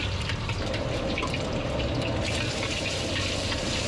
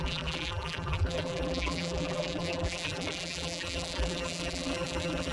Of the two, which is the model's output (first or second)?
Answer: second